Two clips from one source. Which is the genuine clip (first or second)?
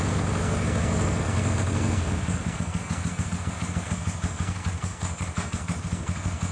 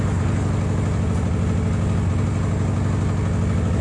second